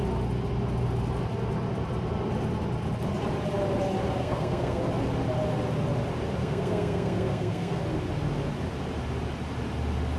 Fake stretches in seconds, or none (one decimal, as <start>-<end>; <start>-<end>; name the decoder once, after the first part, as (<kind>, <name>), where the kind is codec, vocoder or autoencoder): 4.2-4.8 (codec, SNAC); 6.4-7.8

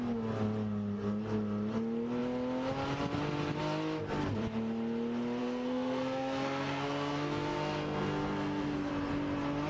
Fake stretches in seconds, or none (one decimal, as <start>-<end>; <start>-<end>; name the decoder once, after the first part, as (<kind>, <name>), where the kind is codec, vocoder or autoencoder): 5.4-8.9 (codec, SNAC)

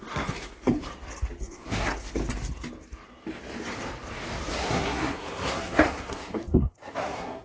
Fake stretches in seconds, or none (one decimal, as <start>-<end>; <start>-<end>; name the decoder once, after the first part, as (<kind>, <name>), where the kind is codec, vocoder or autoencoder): 0.0-0.8 (codec, SNAC); 1.4-2.2; 4.5-7.4

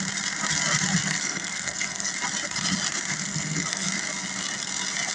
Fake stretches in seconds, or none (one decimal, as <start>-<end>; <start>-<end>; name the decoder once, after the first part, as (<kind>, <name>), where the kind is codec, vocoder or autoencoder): 1.0-2.1 (codec, SNAC); 3.3-3.9